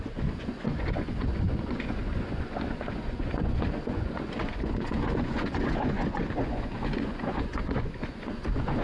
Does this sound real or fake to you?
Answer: fake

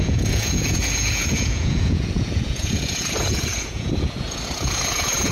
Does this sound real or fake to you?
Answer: fake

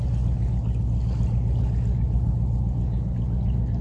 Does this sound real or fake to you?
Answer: real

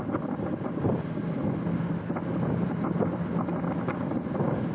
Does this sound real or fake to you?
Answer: real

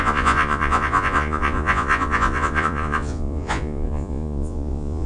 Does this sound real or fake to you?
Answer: fake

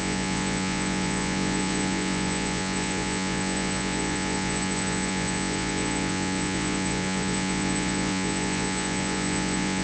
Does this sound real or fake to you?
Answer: fake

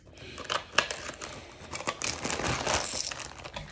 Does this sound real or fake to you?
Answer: real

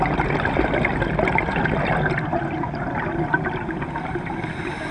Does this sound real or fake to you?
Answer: real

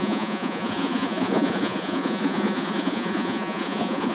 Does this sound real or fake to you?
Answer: fake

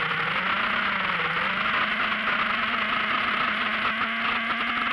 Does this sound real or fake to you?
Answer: real